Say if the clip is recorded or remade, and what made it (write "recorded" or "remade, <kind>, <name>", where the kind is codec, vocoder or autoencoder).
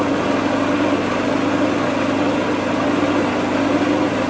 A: recorded